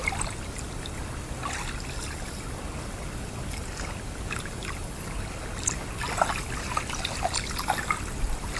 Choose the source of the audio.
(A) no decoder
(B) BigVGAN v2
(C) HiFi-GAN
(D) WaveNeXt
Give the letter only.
A